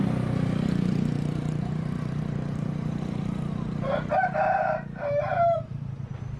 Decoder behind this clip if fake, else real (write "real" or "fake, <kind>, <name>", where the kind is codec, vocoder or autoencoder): fake, vocoder, BigVGAN v2